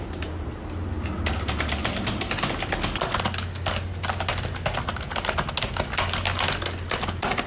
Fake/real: real